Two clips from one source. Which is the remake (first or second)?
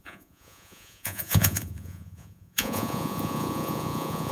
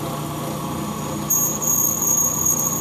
first